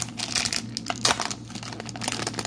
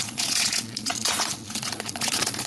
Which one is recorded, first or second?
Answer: first